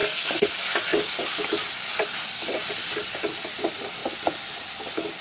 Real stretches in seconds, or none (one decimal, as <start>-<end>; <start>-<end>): 0.5-5.2